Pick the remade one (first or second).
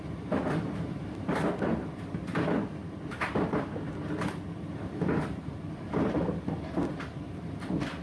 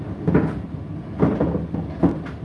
first